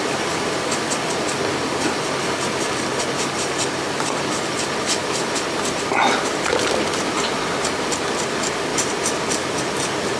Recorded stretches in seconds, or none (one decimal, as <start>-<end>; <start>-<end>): 0.0-10.2